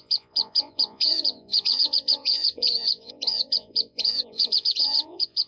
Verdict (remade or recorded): remade